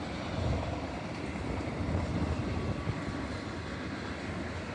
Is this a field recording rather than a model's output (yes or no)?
yes